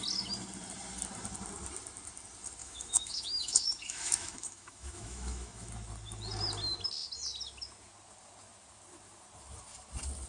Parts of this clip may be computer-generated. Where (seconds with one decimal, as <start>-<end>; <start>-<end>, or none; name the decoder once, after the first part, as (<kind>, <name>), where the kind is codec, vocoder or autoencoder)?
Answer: 2.6-5.7 (autoencoder, DAC-VAE)